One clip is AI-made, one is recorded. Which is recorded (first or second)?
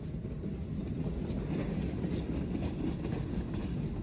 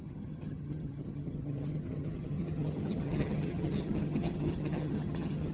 first